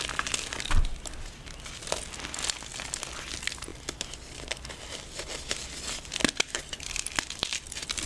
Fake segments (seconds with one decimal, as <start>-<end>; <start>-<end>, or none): none